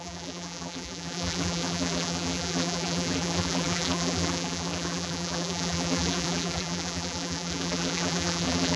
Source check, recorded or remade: remade